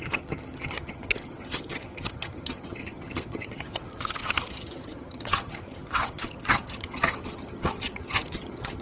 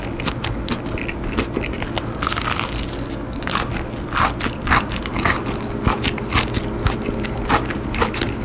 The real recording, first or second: second